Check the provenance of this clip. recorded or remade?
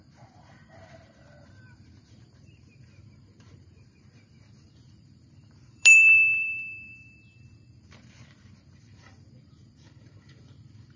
remade